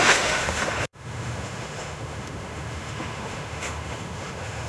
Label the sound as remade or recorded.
remade